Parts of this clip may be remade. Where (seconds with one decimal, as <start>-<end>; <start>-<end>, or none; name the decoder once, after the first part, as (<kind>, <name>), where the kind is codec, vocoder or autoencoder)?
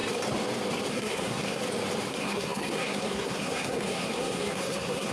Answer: 0.9-1.6 (codec, SNAC); 2.1-5.1